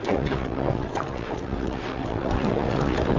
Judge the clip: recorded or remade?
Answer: remade